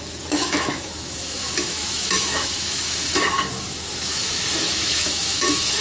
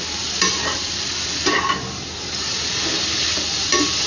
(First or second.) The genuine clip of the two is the second